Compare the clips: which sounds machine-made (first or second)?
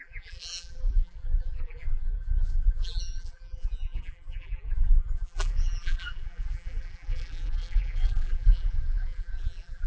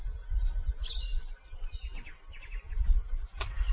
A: first